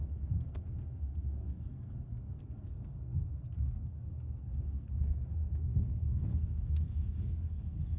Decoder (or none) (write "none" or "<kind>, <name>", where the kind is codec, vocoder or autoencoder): codec, SNAC